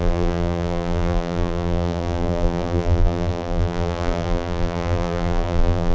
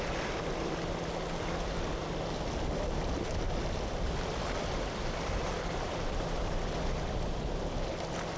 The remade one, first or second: first